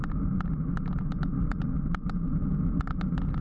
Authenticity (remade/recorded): recorded